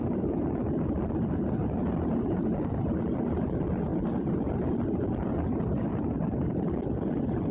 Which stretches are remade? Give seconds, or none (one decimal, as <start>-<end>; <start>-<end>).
none